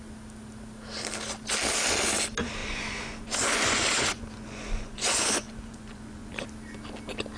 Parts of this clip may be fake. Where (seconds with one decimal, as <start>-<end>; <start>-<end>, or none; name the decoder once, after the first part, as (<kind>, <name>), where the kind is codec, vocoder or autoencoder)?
2.6-6.3 (vocoder, Vocos)